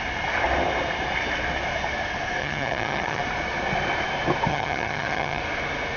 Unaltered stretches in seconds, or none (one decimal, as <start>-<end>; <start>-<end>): 0.0-2.4; 3.2-4.5; 5.4-6.0